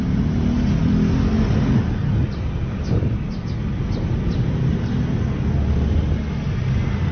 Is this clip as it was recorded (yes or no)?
yes